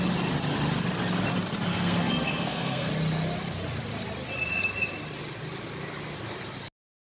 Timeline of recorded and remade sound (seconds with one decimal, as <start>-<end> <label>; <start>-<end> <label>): 0.0-1.7 recorded; 1.7-2.9 remade; 2.9-7.1 recorded

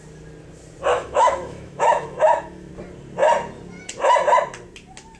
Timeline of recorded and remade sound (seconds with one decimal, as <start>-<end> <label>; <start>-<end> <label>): 0.0-0.9 recorded; 0.9-2.7 remade; 2.7-5.2 recorded

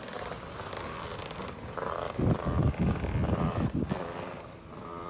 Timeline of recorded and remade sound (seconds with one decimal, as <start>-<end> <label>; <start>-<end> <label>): 0.0-5.1 recorded

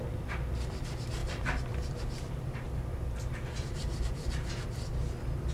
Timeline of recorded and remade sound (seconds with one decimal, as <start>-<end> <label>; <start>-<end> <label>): 0.0-1.2 recorded; 1.2-4.5 remade; 4.5-5.5 recorded

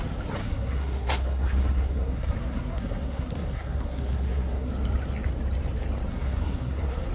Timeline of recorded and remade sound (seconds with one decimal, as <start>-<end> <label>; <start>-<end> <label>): 0.0-0.4 recorded; 0.4-4.7 remade; 4.7-6.1 recorded; 6.1-7.1 remade